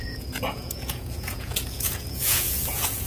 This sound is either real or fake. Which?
fake